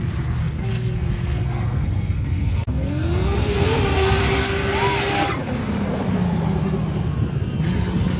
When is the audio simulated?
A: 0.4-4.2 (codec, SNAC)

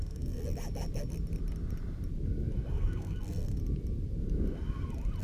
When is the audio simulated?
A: 0.0-0.4 (codec, SNAC); 2.7-3.6

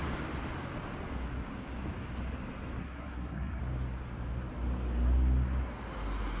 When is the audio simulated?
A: 2.8-3.6 (codec, SNAC)

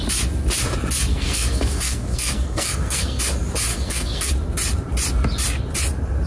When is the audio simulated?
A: 1.1-3.2 (codec, SNAC); 3.7-4.3

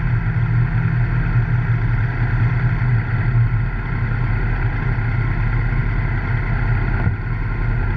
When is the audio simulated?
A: none

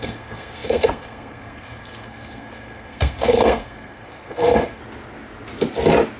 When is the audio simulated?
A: 0.0-4.8 (codec, SNAC)

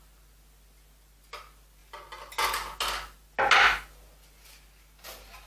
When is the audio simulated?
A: none